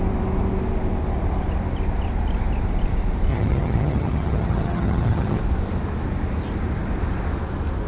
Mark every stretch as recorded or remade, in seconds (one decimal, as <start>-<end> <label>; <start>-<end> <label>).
0.0-3.3 recorded; 3.3-5.4 remade; 5.4-7.9 recorded